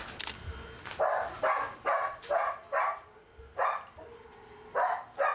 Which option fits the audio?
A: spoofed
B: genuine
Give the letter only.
B